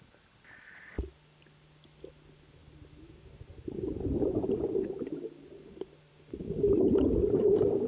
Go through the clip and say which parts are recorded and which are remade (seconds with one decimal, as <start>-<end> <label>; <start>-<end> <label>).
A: 0.0-7.9 recorded